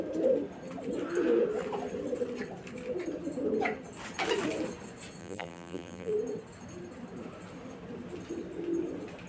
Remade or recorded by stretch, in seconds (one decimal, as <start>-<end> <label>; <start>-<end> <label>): 0.0-5.2 recorded; 5.2-6.1 remade; 6.1-9.3 recorded